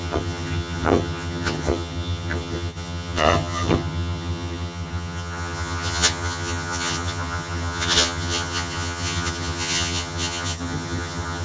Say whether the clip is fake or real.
fake